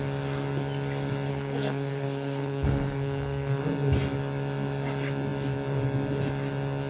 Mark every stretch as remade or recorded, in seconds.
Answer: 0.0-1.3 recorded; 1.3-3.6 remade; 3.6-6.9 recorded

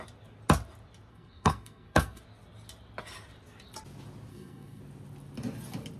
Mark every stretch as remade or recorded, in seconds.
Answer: 0.0-1.1 recorded; 1.1-2.2 remade; 2.2-4.3 recorded; 4.3-4.8 remade; 4.8-6.0 recorded